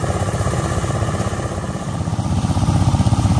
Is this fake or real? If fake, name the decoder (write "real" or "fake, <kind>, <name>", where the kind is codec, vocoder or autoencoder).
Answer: real